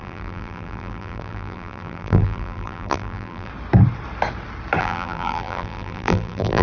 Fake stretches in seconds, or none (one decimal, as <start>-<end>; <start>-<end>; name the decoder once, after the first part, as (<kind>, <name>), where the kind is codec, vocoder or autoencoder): 0.0-3.5 (vocoder, BigVGAN v2); 4.8-6.6